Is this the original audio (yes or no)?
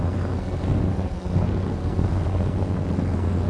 no